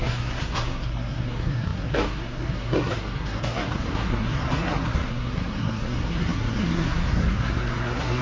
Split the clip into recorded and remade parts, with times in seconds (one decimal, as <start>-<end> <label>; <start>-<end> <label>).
0.0-8.2 remade